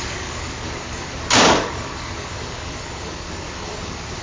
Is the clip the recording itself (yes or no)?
no